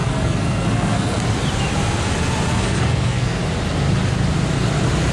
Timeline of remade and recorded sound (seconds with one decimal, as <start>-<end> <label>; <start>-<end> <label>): 0.0-1.2 remade; 1.2-2.5 recorded; 2.5-3.4 remade; 3.4-5.1 recorded